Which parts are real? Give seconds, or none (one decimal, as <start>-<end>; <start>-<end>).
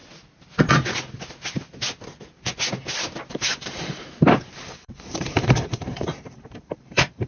0.0-3.3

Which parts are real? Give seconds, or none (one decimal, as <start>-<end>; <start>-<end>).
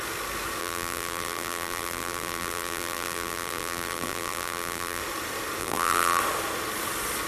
0.0-0.6; 5.0-5.6; 6.2-7.3